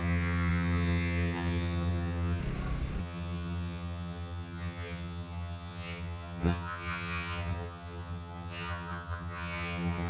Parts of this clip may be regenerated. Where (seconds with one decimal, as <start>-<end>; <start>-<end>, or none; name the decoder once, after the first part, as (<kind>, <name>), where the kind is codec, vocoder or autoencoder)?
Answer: 0.0-2.4 (vocoder, HiFi-GAN); 3.0-10.1

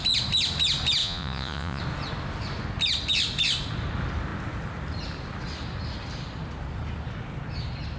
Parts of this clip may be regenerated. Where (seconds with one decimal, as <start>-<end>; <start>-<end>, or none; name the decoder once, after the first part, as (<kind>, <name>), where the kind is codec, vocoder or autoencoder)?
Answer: 1.0-1.8 (vocoder, Vocos)

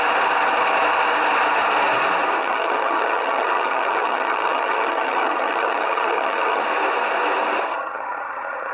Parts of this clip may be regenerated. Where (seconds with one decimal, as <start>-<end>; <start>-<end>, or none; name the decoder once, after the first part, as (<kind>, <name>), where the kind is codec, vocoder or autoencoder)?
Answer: 2.4-6.6 (vocoder, HiFi-GAN); 7.7-8.7

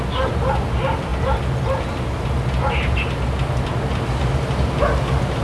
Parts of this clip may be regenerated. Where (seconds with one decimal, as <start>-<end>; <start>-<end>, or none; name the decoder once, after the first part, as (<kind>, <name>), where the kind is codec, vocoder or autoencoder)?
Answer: none

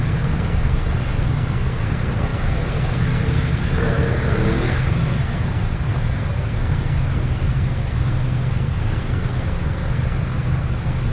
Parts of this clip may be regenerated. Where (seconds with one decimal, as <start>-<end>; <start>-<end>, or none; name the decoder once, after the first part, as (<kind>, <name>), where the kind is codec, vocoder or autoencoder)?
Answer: 0.0-11.1 (codec, SNAC)